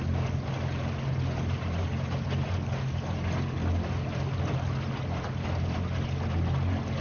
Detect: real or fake real